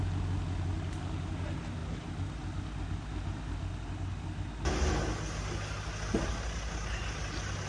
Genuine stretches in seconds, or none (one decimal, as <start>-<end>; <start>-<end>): 0.0-7.7